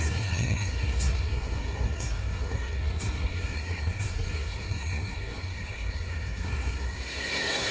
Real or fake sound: fake